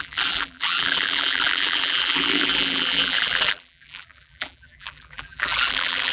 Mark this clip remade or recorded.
remade